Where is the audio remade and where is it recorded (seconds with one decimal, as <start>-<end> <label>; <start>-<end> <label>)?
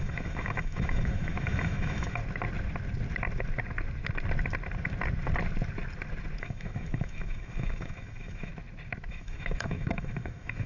0.0-2.2 remade; 2.2-6.4 recorded; 6.4-8.5 remade; 8.5-9.1 recorded; 9.1-10.7 remade